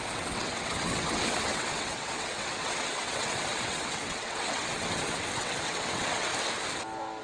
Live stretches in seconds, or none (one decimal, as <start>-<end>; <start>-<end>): 6.3-7.2